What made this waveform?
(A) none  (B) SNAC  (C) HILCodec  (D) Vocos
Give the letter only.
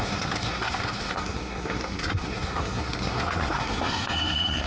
B